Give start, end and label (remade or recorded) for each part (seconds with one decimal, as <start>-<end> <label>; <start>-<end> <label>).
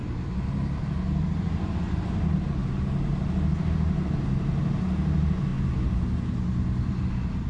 0.0-2.2 remade; 2.2-2.6 recorded; 2.6-3.3 remade; 3.3-7.5 recorded